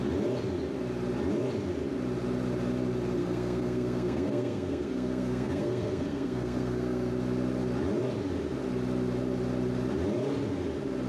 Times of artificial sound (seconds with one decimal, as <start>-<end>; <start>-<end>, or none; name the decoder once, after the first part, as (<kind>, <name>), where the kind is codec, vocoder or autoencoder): 3.2-7.1 (codec, SNAC)